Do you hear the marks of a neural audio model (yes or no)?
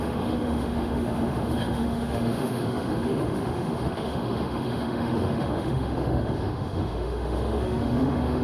yes